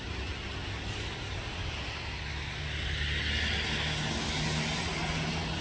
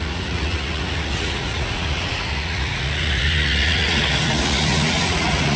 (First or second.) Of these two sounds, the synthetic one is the second